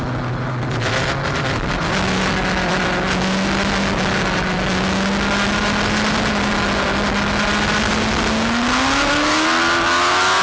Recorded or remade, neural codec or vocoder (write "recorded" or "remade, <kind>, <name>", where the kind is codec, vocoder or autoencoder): recorded